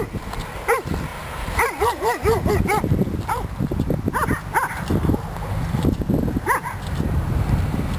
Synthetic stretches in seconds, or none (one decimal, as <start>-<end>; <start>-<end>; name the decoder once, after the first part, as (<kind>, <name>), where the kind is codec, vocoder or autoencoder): 1.1-2.5 (vocoder, BigVGAN v2)